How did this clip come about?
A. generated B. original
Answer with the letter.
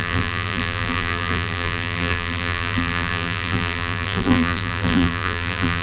A